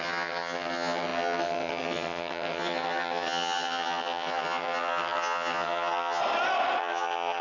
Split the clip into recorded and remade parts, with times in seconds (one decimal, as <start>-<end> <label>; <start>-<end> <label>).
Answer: 0.0-6.2 remade; 6.2-6.8 recorded; 6.8-7.4 remade